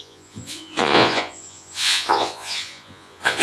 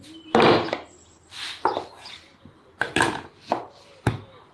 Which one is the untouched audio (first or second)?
second